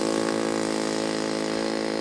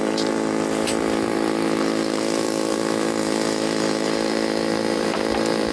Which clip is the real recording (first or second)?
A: first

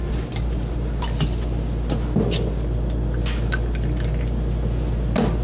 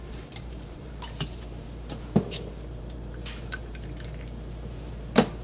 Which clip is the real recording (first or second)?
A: first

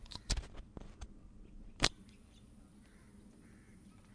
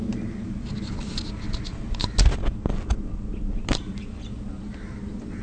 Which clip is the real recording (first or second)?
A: second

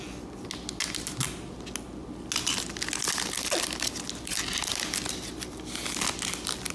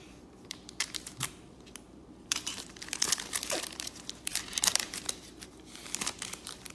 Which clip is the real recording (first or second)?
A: first